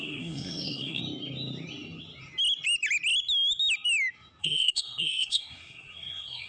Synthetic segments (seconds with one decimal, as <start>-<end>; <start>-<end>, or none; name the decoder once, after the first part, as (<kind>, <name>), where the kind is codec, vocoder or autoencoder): 0.0-1.0 (codec, SNAC); 4.4-6.5

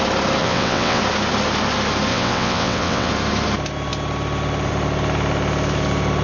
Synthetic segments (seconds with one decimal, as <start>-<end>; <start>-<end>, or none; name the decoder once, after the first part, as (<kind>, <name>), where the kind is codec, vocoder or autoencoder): 0.4-1.0 (vocoder, WaveNeXt); 2.1-3.1

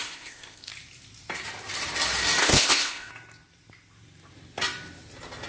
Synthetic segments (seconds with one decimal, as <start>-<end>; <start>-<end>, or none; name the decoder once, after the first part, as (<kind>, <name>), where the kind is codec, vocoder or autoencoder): 0.0-0.7 (codec, ZipCodec); 2.4-3.1

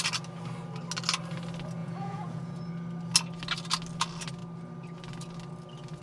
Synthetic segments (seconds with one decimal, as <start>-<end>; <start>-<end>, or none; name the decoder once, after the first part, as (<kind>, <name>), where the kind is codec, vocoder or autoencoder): 1.8-2.6 (vocoder, Vocos)

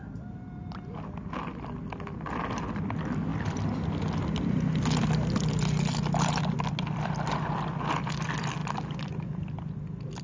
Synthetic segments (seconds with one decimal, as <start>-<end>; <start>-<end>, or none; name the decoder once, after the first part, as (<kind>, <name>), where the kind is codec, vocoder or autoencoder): none

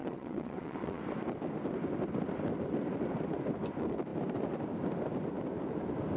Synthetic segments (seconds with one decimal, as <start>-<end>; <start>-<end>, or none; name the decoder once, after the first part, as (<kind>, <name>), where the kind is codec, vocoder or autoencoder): 0.0-1.0 (vocoder, WaveNeXt)